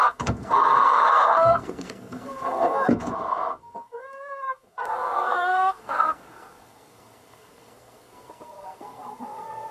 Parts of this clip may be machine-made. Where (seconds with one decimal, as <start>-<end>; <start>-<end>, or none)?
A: 0.0-9.7